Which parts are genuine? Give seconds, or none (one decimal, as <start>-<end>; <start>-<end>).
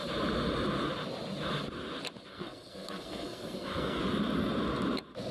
0.0-2.3; 4.0-5.3